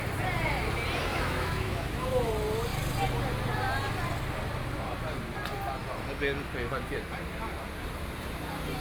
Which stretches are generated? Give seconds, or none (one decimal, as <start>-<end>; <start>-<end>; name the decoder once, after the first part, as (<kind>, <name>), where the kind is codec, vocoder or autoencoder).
1.1-2.3 (autoencoder, DAC-VAE)